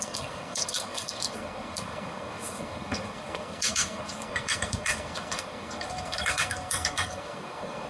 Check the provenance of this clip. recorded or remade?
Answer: remade